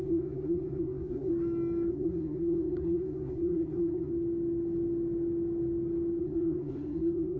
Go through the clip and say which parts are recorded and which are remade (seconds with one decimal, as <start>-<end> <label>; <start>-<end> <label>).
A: 0.0-1.3 remade; 1.3-1.9 recorded; 1.9-4.1 remade; 4.1-6.2 recorded; 6.2-7.4 remade